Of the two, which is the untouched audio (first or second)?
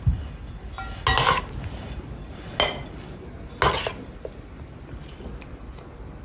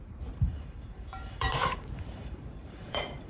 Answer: first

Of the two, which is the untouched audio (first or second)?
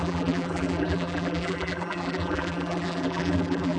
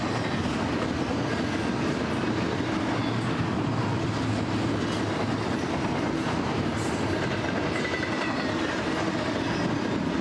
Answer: second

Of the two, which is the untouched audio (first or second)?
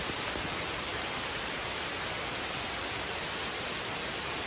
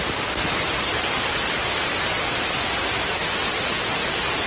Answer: second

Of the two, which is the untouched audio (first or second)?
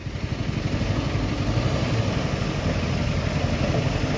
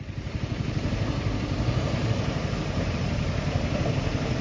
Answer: first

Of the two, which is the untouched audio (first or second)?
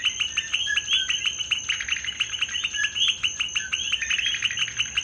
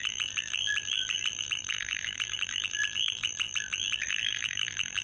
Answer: first